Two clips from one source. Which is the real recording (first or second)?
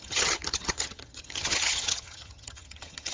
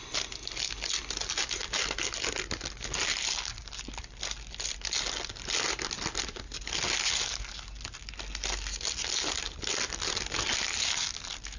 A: second